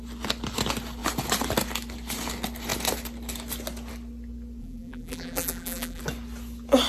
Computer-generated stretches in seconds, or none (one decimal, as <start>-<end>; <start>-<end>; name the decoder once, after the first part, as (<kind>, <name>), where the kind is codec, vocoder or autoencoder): 4.6-6.0 (vocoder, BigVGAN v2)